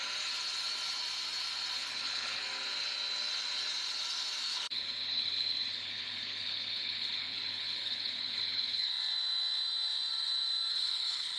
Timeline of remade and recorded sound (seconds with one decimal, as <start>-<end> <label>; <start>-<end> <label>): 0.0-1.8 recorded; 1.8-2.4 remade; 2.4-4.5 recorded; 4.5-8.9 remade; 8.9-10.7 recorded; 10.7-11.4 remade